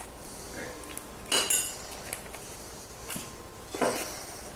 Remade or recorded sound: recorded